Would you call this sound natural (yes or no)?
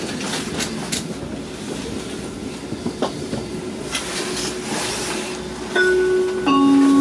yes